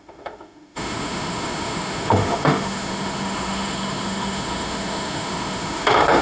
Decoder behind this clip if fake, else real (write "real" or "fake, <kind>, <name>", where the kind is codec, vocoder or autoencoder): fake, autoencoder, DAC-VAE